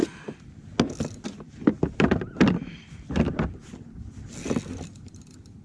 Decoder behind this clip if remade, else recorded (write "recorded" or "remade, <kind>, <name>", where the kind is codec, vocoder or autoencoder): recorded